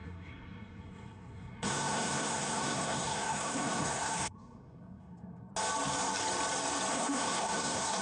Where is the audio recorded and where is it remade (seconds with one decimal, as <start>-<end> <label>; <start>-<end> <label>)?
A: 0.0-5.5 remade; 5.5-6.9 recorded; 6.9-8.0 remade